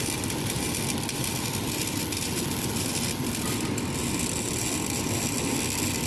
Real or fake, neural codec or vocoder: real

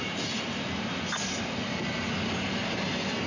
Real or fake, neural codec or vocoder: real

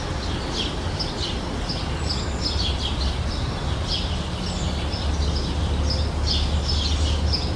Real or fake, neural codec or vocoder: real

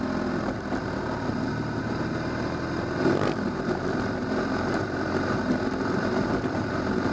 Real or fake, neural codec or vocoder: real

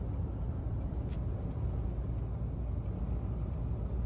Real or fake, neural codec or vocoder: real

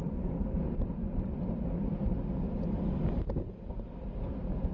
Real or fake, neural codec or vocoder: real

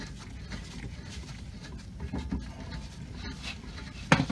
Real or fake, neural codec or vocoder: real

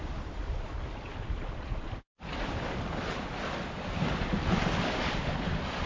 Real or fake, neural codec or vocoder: real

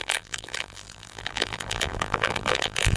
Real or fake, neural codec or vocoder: fake, vocoder, BigVGAN v2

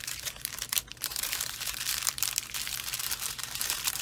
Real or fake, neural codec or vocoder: fake, vocoder, BigVGAN v2